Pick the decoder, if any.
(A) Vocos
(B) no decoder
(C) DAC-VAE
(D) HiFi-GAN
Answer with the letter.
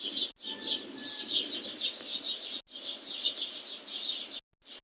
B